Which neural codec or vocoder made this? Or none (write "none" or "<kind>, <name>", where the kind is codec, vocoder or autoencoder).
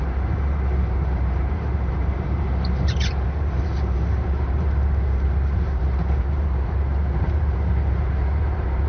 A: vocoder, BigVGAN v2